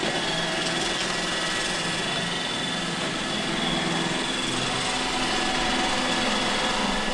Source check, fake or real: real